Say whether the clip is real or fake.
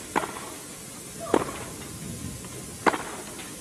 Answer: real